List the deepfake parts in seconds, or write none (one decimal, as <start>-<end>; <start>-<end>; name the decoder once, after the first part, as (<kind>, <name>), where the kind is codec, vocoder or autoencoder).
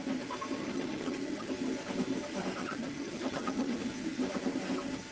0.6-1.5 (vocoder, HiFi-GAN); 2.6-3.8